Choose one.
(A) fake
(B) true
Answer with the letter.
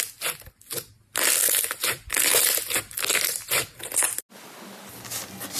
B